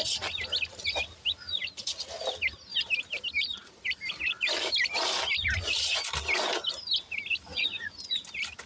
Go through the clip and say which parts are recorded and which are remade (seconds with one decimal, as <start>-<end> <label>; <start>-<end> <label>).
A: 0.0-7.5 recorded; 7.5-8.2 remade; 8.2-8.7 recorded